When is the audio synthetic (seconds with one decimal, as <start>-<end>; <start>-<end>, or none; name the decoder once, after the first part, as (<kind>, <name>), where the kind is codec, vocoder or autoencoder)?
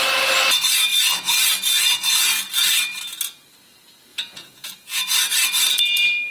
4.1-5.0 (vocoder, Vocos)